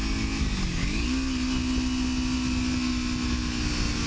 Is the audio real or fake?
real